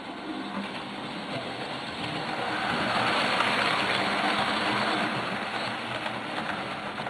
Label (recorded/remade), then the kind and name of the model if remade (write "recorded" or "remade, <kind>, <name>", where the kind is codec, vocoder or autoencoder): recorded